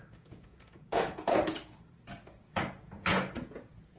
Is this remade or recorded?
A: remade